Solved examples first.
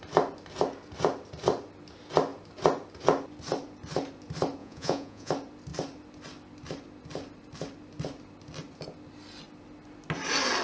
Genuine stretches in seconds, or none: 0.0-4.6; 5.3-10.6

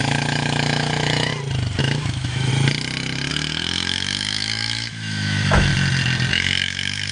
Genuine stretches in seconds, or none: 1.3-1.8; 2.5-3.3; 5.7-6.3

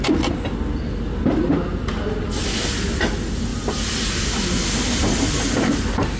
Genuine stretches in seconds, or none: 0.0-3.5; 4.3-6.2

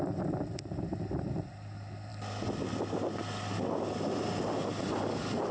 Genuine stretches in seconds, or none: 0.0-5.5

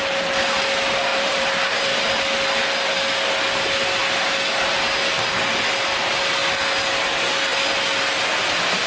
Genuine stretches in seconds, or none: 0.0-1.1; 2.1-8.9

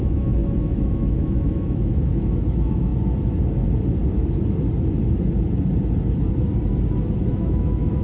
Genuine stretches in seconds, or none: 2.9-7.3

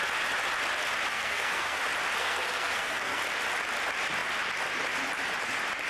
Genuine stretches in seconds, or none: 0.0-1.1; 1.8-2.2; 3.2-5.9

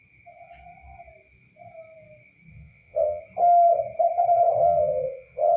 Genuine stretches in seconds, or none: 0.0-2.5; 3.2-4.6